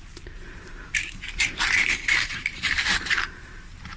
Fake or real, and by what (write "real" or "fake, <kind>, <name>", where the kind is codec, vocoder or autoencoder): fake, vocoder, BigVGAN v2